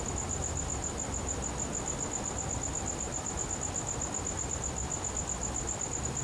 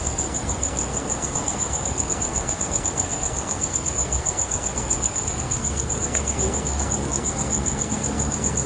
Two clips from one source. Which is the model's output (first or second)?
second